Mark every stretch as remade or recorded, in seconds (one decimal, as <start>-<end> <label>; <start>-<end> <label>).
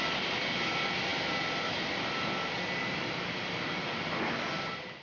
0.0-5.0 recorded